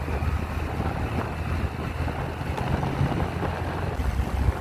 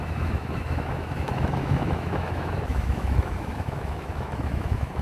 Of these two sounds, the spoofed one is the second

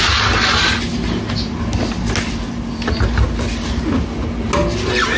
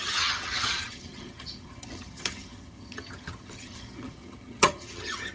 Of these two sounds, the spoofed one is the second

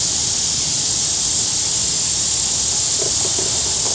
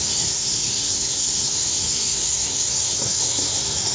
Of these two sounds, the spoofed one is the second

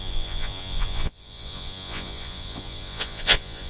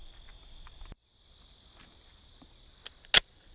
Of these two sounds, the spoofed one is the first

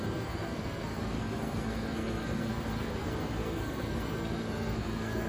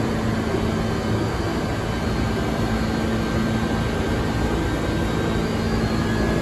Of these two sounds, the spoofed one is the first